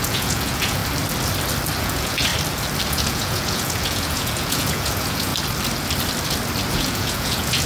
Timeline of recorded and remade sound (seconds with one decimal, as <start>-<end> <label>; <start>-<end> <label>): 0.0-0.8 remade; 0.8-1.8 recorded; 1.8-2.3 remade; 2.3-2.9 recorded; 2.9-5.3 remade; 5.3-6.7 recorded; 6.7-7.7 remade